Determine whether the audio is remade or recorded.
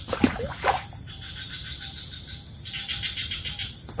recorded